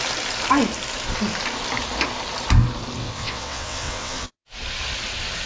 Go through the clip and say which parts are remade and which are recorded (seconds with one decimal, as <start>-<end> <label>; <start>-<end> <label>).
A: 0.0-3.0 recorded; 3.0-4.5 remade; 4.5-5.5 recorded